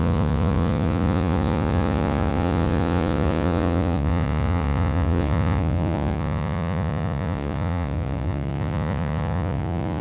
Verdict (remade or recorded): remade